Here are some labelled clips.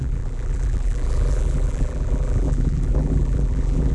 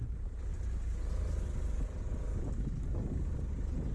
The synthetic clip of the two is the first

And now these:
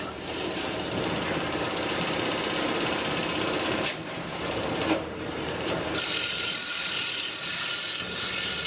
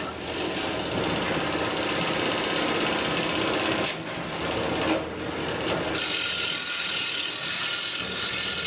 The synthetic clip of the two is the first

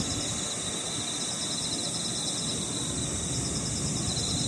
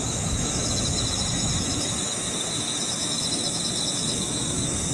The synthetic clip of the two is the second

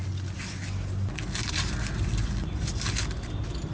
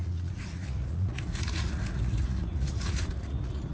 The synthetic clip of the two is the second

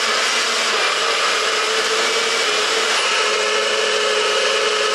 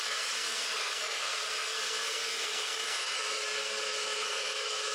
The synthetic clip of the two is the second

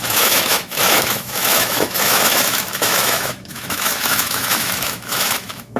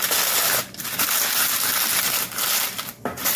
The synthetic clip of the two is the first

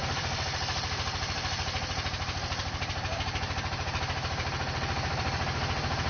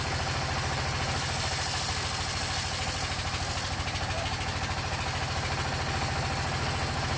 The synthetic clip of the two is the first